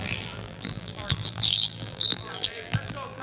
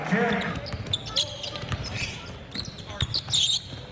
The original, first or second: second